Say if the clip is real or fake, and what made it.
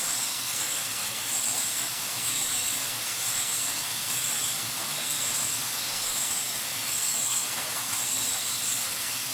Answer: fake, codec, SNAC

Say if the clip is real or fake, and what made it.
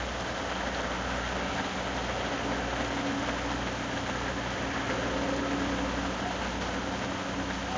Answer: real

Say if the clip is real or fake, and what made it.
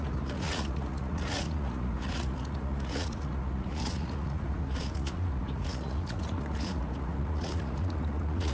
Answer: fake, vocoder, Vocos